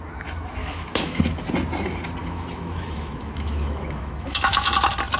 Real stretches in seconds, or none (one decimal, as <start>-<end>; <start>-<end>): 0.0-0.6; 1.2-2.2; 4.7-5.2